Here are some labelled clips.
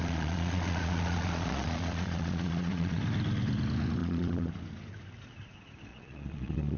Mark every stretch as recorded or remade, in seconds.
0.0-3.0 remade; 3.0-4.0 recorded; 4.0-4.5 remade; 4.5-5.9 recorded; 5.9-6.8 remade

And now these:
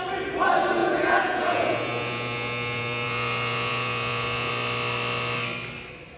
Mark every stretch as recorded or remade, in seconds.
0.0-0.8 recorded; 0.8-4.5 remade; 4.5-6.2 recorded

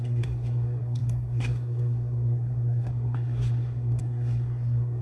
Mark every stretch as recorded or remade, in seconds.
0.0-5.0 remade

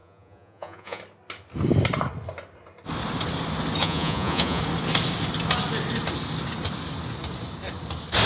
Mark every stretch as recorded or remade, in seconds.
0.0-1.0 remade; 1.0-3.8 recorded; 3.8-4.6 remade; 4.6-8.3 recorded

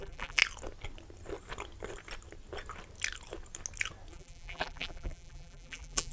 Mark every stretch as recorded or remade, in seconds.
0.0-0.4 remade; 0.4-4.1 recorded; 4.1-6.1 remade